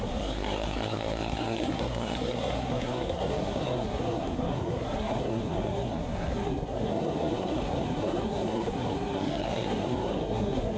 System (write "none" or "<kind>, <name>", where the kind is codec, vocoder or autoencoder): codec, SNAC